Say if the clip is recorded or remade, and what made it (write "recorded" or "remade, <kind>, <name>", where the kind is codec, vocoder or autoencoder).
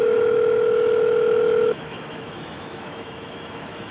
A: remade, autoencoder, DAC-VAE